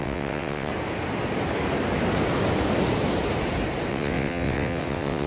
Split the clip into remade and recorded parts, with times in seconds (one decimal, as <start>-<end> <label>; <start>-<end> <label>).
0.0-0.7 remade; 0.7-3.9 recorded; 3.9-5.3 remade